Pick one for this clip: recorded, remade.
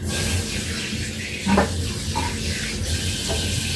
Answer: recorded